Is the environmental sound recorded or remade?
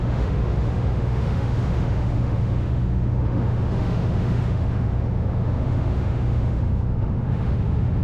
remade